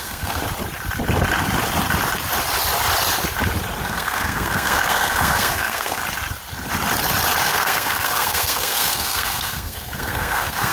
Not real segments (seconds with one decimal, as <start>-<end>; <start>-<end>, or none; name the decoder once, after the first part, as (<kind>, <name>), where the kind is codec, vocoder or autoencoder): 0.0-0.4 (codec, SNAC); 3.8-6.0; 7.4-10.7

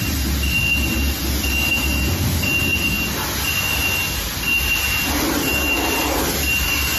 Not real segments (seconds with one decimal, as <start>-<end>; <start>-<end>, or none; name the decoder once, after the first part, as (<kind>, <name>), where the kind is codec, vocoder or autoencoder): none

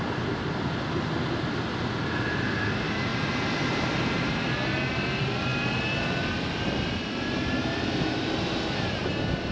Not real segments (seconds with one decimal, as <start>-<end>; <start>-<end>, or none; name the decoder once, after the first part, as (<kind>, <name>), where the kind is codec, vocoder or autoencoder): none

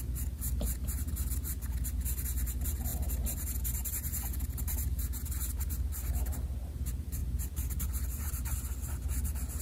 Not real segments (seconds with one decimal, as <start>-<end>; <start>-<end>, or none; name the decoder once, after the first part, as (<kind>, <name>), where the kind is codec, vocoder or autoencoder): none